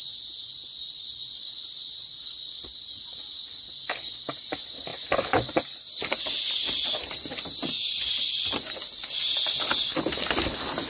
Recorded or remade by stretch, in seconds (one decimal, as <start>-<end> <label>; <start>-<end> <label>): 0.0-10.9 recorded